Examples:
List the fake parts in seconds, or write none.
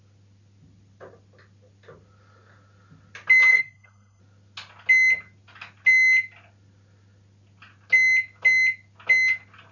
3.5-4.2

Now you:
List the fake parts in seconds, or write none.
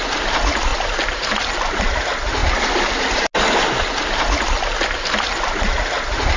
0.7-2.0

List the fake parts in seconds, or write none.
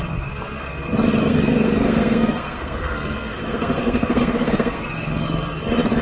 1.2-4.8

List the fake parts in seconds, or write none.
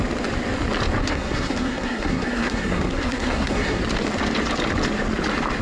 1.0-3.8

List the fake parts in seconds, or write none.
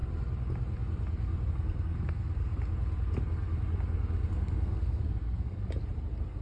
1.5-2.5; 4.3-5.6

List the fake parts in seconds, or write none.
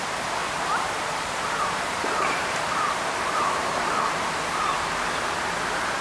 0.4-4.0